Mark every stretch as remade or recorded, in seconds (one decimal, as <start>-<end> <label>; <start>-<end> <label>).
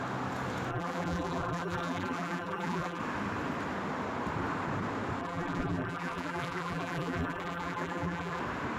0.0-0.7 recorded; 0.7-3.0 remade; 3.0-5.2 recorded; 5.2-8.4 remade; 8.4-8.8 recorded